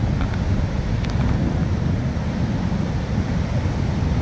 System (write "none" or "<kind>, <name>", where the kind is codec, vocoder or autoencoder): none